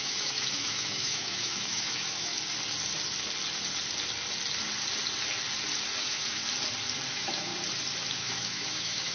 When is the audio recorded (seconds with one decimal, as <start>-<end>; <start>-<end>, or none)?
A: 2.3-6.0; 6.4-7.1; 7.5-8.1